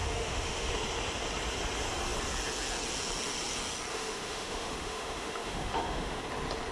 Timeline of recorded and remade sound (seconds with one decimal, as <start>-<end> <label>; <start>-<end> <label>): 0.0-0.7 remade; 0.7-3.9 recorded; 3.9-6.2 remade; 6.2-6.7 recorded